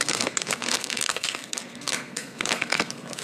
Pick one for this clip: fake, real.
fake